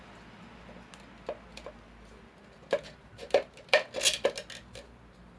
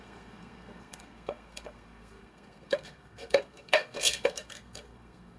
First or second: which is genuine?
first